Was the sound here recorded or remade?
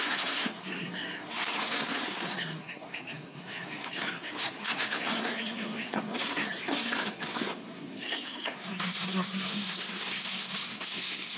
remade